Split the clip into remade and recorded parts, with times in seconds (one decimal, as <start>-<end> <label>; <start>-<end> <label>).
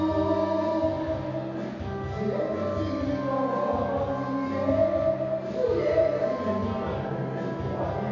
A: 0.0-8.1 recorded